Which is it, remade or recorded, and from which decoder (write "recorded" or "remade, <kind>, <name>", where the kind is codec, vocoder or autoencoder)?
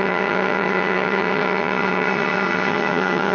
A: remade, vocoder, HiFi-GAN